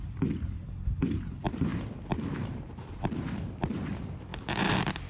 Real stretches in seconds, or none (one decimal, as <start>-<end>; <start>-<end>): none